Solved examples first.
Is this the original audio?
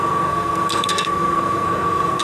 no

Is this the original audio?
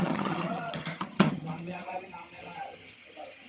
no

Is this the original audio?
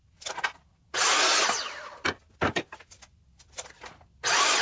yes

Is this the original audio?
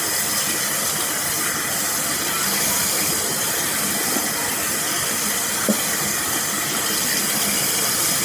yes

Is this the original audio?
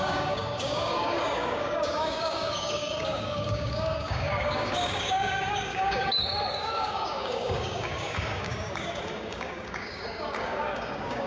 no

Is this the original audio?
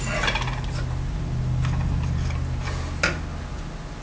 yes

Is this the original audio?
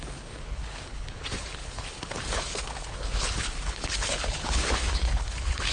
no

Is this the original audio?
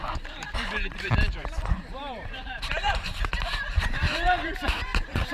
no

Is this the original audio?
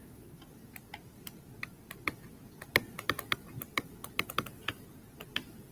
yes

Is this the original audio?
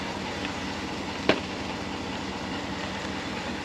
yes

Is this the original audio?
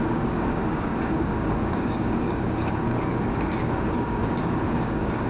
no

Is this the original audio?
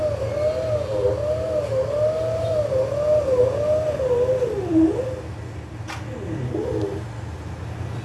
yes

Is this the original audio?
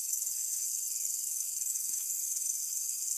no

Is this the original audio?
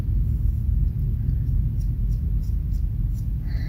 yes